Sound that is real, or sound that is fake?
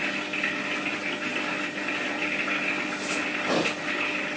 real